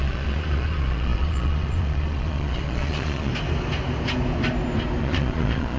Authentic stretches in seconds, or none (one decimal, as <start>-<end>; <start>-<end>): 3.3-5.0